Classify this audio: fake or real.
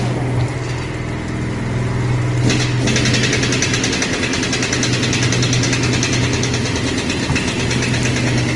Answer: real